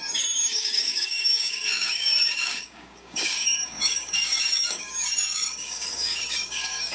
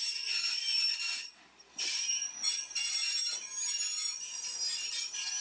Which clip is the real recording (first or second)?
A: second